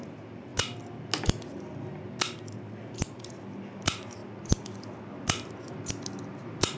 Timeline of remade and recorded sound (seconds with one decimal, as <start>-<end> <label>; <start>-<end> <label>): 0.0-6.8 recorded